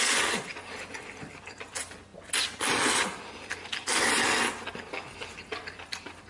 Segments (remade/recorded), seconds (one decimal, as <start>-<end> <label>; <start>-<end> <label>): 0.0-6.3 recorded